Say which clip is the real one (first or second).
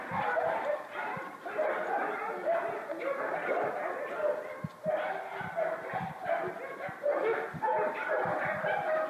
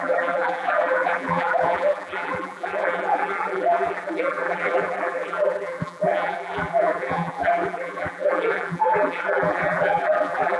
first